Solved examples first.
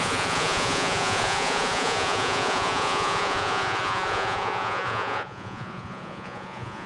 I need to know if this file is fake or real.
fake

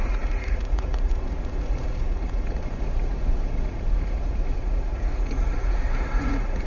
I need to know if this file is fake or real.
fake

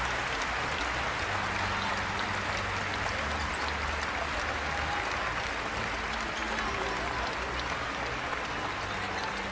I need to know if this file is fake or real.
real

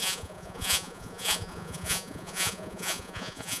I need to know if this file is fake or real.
fake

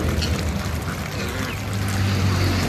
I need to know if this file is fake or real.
real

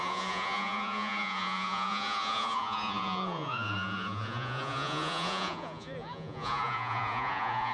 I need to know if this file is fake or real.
fake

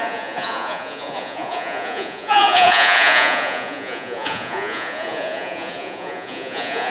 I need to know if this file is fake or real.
fake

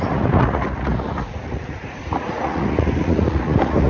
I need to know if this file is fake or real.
fake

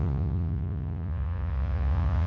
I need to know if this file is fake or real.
fake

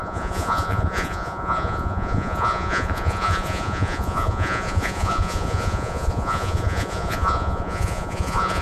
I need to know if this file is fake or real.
fake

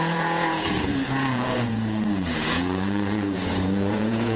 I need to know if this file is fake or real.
fake